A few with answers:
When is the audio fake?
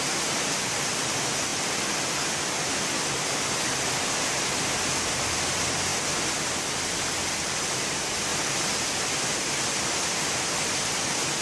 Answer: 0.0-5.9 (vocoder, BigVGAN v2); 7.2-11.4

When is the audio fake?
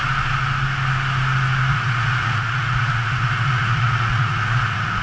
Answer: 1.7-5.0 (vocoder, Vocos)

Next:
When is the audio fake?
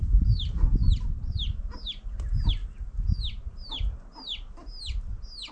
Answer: 0.0-1.6 (vocoder, BigVGAN v2)